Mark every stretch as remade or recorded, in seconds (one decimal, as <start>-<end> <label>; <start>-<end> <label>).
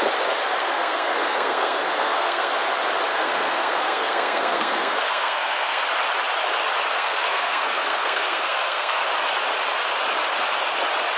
0.0-0.6 recorded; 0.6-2.6 remade; 2.6-3.1 recorded; 3.1-5.8 remade; 5.8-6.9 recorded; 6.9-9.0 remade; 9.0-11.2 recorded